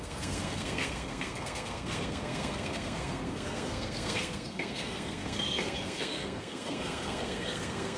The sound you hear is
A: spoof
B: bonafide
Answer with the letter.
A